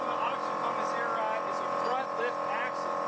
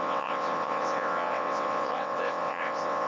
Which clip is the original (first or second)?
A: first